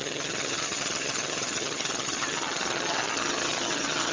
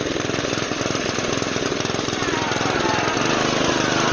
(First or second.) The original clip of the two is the second